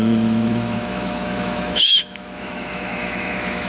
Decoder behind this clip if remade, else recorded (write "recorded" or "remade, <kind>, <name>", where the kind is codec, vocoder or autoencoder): remade, autoencoder, DAC-VAE